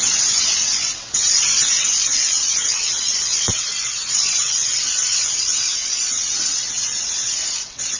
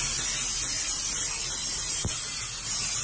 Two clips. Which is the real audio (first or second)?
second